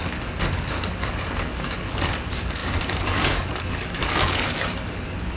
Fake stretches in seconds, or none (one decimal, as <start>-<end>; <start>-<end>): 0.0-5.4